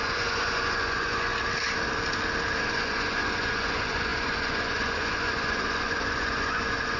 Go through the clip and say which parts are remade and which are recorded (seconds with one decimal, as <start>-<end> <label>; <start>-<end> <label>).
0.0-1.3 remade; 1.3-2.6 recorded; 2.6-7.0 remade